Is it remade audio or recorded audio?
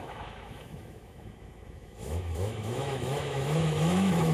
remade